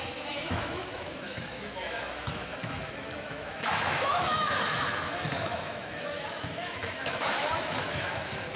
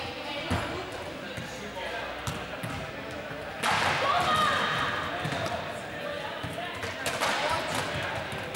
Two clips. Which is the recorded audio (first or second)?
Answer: second